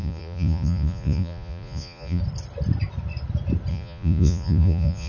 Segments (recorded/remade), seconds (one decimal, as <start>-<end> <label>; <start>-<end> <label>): 0.0-2.2 remade; 2.2-3.7 recorded; 3.7-5.1 remade